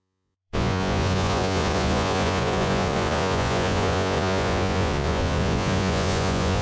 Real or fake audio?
fake